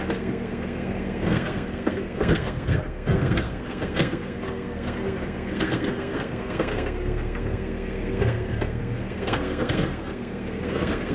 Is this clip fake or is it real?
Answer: fake